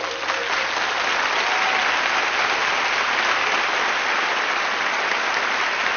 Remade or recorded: recorded